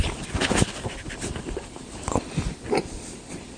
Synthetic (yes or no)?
no